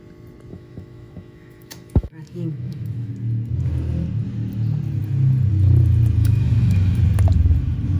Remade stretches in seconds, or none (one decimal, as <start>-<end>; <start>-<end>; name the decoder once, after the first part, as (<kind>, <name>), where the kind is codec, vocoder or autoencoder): 0.5-3.1 (autoencoder, DAC-VAE); 6.2-7.0